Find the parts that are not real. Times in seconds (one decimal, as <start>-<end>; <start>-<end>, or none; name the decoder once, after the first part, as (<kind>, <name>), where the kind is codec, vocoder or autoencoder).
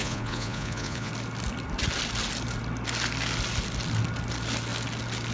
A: 0.0-1.1 (vocoder, Vocos)